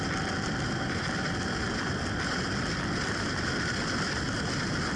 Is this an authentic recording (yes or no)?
yes